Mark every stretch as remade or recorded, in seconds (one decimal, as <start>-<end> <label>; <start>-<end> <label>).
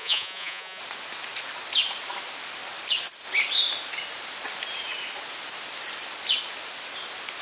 0.0-0.8 remade; 0.8-7.4 recorded